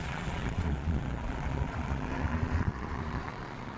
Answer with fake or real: fake